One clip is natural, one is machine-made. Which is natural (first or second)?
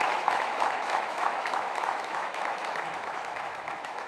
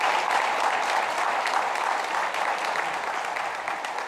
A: second